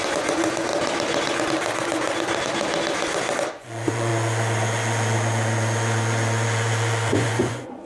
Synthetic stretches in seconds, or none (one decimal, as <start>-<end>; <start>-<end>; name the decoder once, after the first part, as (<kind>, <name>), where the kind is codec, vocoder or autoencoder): 0.0-0.7 (vocoder, Vocos); 3.5-4.1; 7.1-7.9